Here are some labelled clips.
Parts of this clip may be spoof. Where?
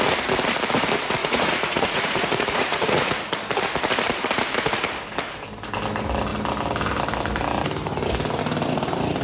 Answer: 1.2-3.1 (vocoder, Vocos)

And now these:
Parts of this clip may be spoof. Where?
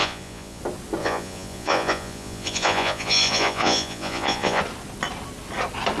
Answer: 0.0-0.6 (vocoder, Vocos); 1.0-4.6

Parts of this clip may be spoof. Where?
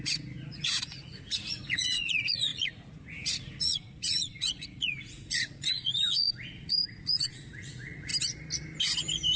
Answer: 0.0-8.1 (vocoder, Vocos)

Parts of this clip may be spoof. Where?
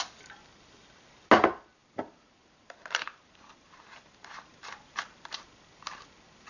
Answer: 1.8-5.4 (vocoder, BigVGAN v2)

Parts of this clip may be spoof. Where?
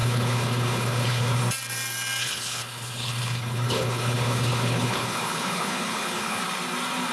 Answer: 0.0-1.4 (codec, HILCodec); 2.2-6.4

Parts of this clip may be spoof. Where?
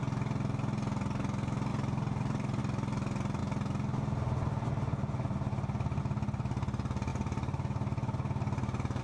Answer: 1.7-2.6 (vocoder, BigVGAN v2)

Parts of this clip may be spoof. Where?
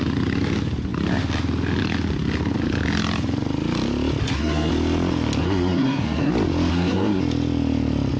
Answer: 4.2-4.7 (codec, SNAC); 5.4-6.3; 6.7-7.2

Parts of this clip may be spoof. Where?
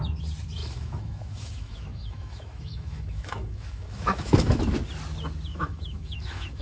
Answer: 0.6-4.6 (autoencoder, DAC-VAE); 5.5-6.6